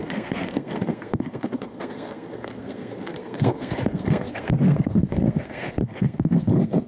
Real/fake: fake